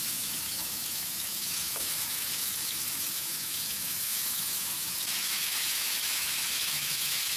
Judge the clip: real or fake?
fake